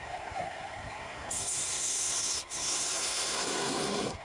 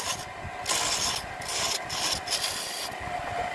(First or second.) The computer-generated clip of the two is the first